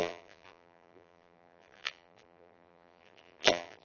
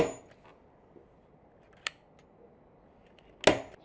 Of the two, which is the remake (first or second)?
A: first